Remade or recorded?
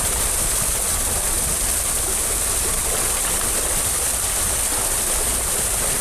recorded